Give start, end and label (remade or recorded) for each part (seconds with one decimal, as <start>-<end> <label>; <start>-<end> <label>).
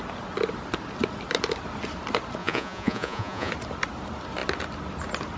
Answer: 0.0-2.4 recorded; 2.4-3.5 remade; 3.5-5.4 recorded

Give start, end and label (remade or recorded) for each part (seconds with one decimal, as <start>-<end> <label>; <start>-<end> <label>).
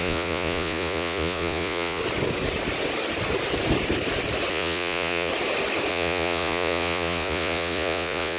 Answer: 0.0-2.0 remade; 2.0-4.5 recorded; 4.5-5.3 remade; 5.3-5.9 recorded; 5.9-8.4 remade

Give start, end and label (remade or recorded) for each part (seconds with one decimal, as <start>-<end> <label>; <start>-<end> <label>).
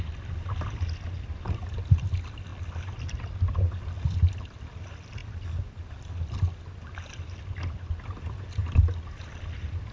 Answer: 0.0-9.9 recorded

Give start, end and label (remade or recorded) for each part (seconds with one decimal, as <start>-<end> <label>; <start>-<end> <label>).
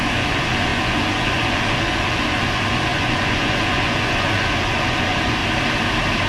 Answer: 0.0-5.4 remade; 5.4-6.3 recorded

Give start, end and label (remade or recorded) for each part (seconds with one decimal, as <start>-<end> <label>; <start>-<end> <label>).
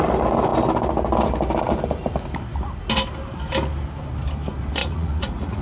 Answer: 0.0-4.8 recorded; 4.8-5.6 remade